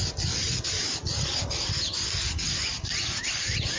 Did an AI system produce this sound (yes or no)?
no